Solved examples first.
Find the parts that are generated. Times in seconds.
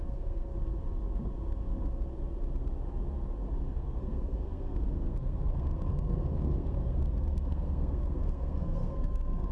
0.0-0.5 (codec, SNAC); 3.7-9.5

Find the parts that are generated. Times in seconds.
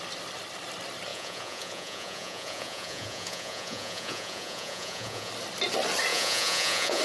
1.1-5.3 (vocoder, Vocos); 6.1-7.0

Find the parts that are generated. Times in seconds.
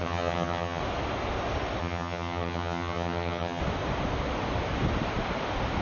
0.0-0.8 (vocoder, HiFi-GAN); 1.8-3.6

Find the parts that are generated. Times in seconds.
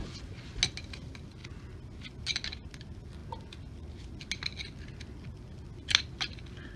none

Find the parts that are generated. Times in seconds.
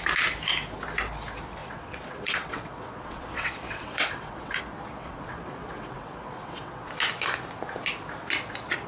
1.6-4.6 (vocoder, WaveNeXt); 5.0-6.9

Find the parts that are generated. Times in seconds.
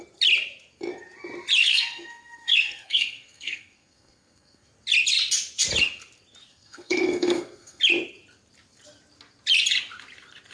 1.6-4.7 (codec, SNAC); 6.5-7.8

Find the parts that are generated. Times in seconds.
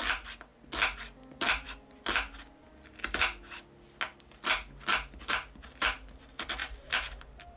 6.6-7.6 (vocoder, BigVGAN v2)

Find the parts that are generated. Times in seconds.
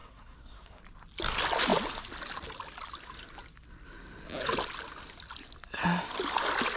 0.0-0.8 (codec, SNAC)